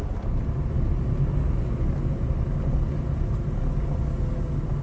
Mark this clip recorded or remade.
recorded